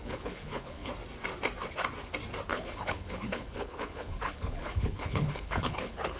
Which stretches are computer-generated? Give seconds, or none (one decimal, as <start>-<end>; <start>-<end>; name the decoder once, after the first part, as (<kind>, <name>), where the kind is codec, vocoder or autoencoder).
0.0-0.9 (codec, HILCodec); 2.5-6.2